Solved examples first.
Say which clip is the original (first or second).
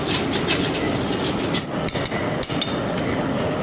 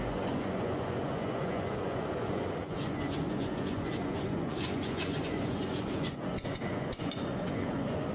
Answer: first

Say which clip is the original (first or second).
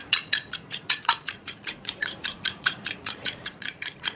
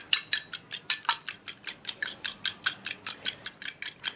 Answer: second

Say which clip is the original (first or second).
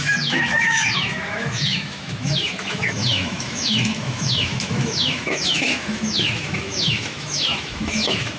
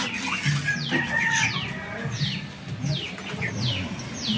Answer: second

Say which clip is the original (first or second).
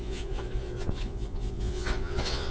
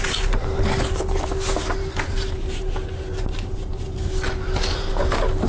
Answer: second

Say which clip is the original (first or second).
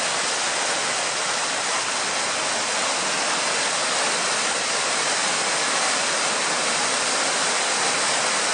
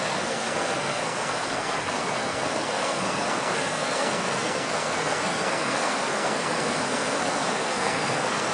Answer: first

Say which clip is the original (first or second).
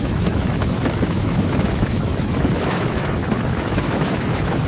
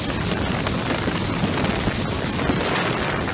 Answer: second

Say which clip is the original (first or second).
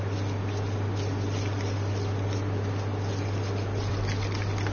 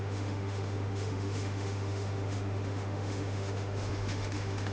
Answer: first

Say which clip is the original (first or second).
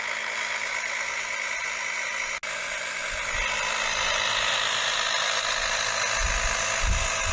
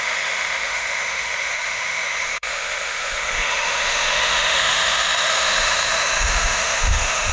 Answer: first